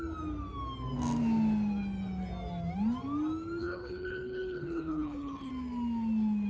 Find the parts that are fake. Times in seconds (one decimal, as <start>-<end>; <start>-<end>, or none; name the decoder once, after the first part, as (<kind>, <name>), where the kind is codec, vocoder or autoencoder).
3.6-5.5 (codec, HILCodec)